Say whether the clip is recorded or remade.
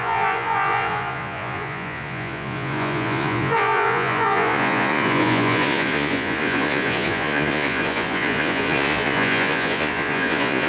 remade